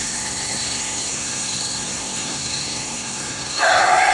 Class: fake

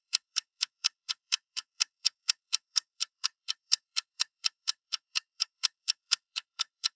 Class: fake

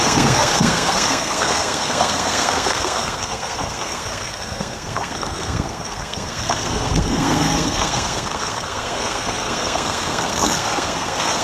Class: fake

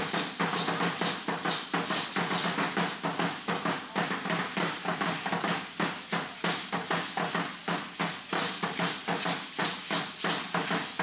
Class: real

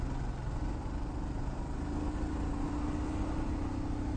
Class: real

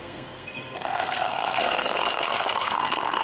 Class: fake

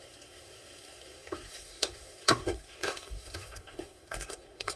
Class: fake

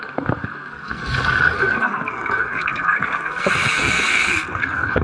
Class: fake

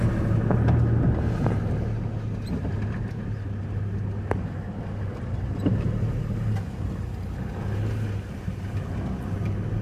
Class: real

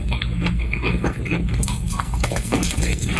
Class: fake